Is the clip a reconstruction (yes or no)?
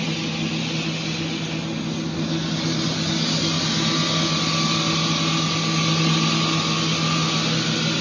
no